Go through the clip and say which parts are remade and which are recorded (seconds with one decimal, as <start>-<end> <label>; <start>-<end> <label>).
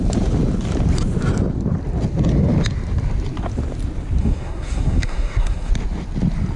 0.0-4.2 recorded; 4.2-5.7 remade; 5.7-6.6 recorded